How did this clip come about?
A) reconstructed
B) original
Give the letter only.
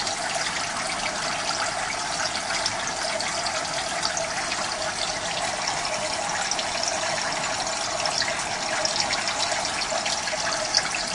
B